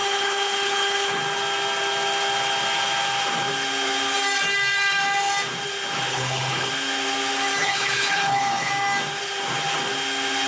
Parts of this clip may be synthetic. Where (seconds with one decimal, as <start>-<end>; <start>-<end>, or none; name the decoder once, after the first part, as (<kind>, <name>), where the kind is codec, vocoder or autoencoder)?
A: 0.0-1.2 (codec, HILCodec); 6.1-6.7; 7.6-8.7